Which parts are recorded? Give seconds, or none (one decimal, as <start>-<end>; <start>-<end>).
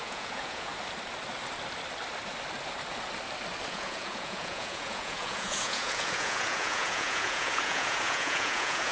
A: 0.7-3.7